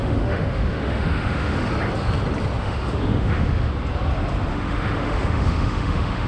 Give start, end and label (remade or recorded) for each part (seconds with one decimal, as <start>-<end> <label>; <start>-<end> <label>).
0.0-1.7 remade; 1.7-2.6 recorded; 2.6-3.7 remade; 3.7-4.5 recorded; 4.5-6.3 remade